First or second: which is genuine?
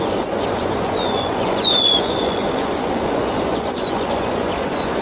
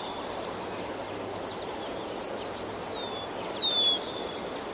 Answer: second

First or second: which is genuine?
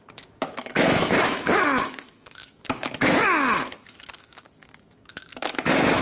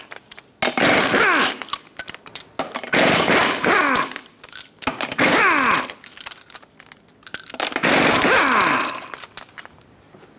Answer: second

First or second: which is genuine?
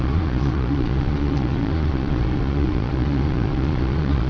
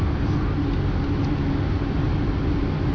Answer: second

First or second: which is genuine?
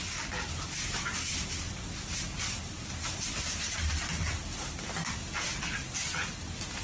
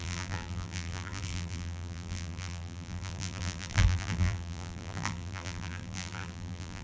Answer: first